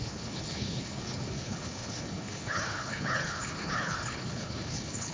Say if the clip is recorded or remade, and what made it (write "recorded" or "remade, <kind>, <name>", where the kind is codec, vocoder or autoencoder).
remade, codec, HILCodec